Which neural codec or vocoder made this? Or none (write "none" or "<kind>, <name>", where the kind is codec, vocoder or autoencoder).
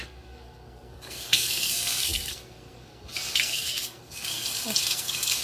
codec, SNAC